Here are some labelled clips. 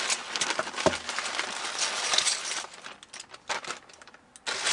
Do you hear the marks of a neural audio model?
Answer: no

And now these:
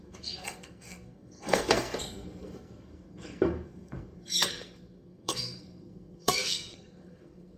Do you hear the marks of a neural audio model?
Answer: yes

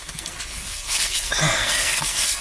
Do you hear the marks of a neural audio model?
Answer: yes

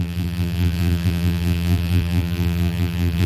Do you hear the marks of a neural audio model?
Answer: yes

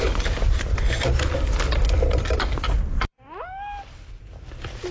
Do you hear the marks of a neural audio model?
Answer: yes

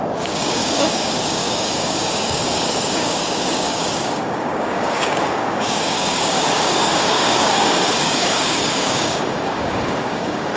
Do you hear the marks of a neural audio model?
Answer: yes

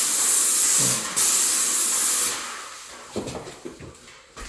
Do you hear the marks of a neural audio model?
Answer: no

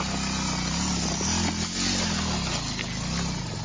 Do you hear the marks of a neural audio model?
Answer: no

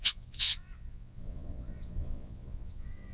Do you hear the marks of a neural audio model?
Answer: yes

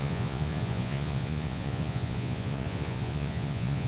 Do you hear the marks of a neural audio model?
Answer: yes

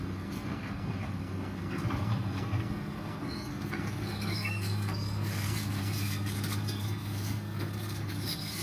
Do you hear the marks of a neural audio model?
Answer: yes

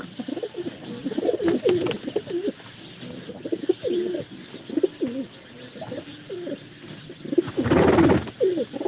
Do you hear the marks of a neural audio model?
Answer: no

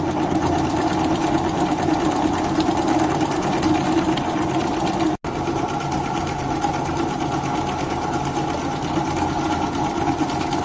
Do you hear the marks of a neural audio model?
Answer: no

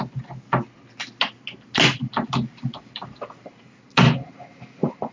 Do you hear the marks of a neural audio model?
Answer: no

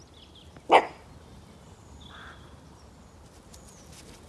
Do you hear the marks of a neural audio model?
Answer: no